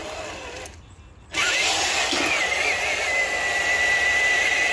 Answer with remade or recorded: recorded